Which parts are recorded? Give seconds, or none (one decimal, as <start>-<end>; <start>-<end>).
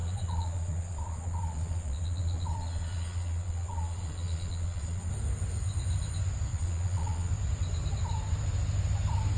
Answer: 5.1-6.5; 7.3-9.4